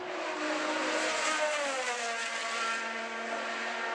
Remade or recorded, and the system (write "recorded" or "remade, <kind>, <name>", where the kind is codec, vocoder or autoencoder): recorded